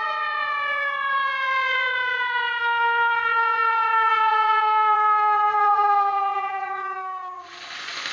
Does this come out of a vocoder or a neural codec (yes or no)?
yes